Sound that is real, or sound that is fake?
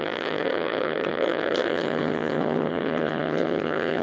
fake